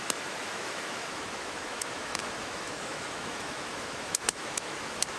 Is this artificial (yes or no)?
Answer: yes